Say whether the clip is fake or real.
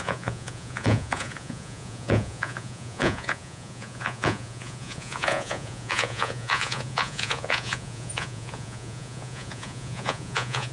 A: fake